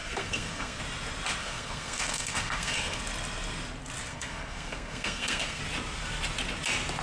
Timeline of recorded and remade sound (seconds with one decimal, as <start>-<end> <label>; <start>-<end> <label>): 0.0-0.8 remade; 0.8-1.4 recorded; 1.4-3.0 remade; 3.0-4.1 recorded; 4.1-5.6 remade; 5.6-7.0 recorded